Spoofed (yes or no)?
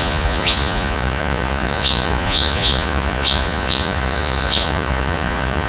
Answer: yes